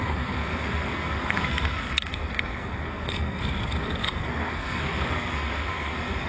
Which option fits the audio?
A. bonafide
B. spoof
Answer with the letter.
B